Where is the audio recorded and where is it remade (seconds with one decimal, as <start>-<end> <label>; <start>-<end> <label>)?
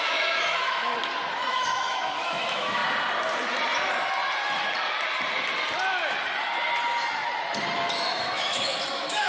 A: 0.0-0.9 remade; 0.9-1.5 recorded; 1.5-2.8 remade; 2.8-7.9 recorded; 7.9-9.3 remade